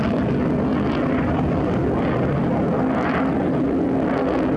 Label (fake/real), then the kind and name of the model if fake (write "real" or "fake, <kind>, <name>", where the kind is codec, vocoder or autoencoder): real